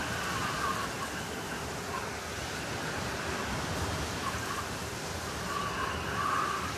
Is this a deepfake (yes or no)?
no